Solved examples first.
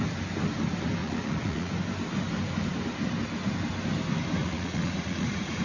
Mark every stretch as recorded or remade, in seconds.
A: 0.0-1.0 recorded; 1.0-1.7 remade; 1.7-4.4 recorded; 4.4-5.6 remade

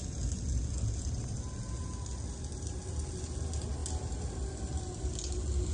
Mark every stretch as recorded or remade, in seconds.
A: 0.0-5.7 recorded

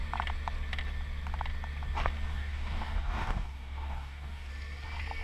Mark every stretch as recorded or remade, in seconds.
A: 0.0-2.3 recorded; 2.3-4.5 remade; 4.5-5.2 recorded

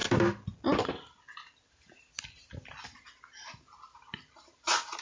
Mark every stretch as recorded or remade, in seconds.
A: 0.0-5.0 recorded